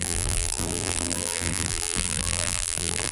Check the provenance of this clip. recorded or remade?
remade